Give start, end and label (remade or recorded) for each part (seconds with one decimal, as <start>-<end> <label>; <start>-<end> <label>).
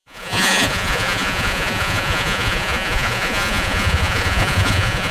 0.0-5.1 remade